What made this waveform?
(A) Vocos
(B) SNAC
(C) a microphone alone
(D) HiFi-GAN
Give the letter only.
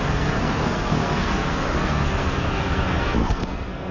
B